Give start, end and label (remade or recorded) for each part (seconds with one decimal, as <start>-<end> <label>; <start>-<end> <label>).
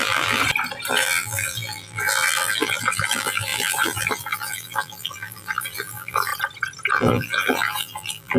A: 0.0-0.4 remade; 0.4-0.9 recorded; 0.9-6.3 remade; 6.3-6.9 recorded; 6.9-8.4 remade